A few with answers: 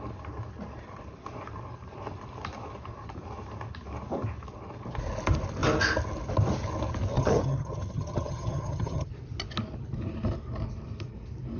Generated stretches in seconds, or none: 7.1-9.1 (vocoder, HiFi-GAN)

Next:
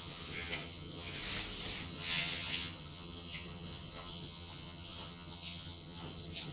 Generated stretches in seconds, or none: 0.0-1.2 (vocoder, HiFi-GAN); 1.8-6.5

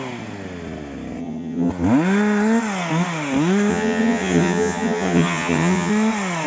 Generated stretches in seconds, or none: 1.2-1.7 (vocoder, HiFi-GAN); 3.7-5.9

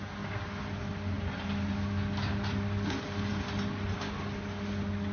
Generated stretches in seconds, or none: none

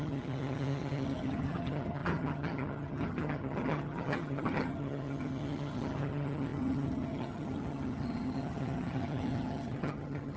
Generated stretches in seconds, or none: 0.0-10.4 (vocoder, HiFi-GAN)